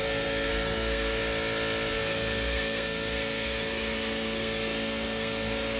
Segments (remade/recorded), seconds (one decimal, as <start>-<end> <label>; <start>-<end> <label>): 0.0-1.2 remade; 1.2-1.9 recorded; 1.9-5.8 remade